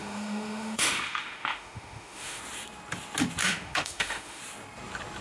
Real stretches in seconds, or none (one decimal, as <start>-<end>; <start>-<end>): 2.4-3.4; 4.4-5.2